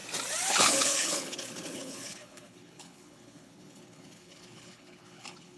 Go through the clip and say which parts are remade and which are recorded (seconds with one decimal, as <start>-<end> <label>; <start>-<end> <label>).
0.0-0.5 recorded; 0.5-5.6 remade